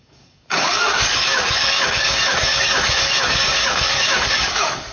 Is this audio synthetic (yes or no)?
yes